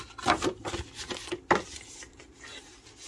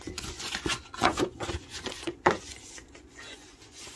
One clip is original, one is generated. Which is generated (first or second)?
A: second